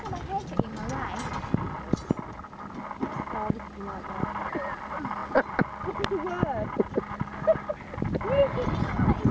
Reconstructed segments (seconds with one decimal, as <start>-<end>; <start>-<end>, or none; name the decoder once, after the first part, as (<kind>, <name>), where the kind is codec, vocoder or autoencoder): none